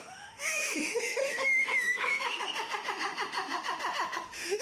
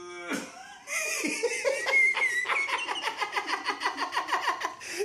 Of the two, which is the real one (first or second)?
second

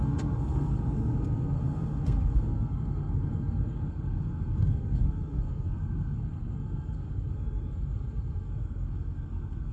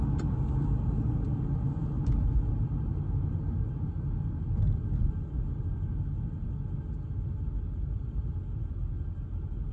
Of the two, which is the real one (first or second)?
second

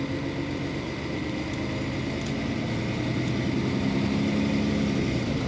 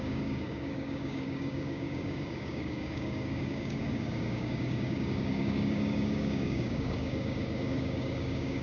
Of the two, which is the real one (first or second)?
first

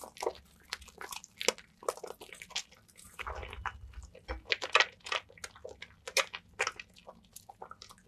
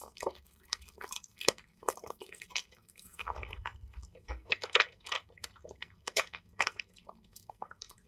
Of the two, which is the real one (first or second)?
first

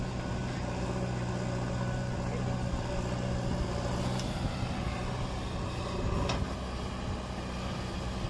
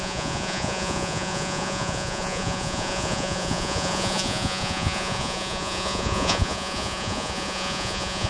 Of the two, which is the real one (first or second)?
first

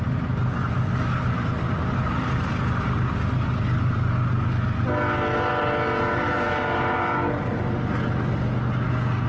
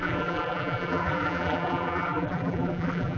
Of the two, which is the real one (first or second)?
first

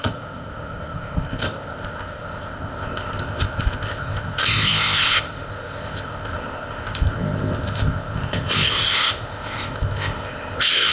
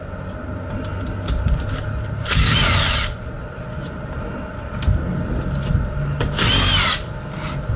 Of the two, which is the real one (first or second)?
second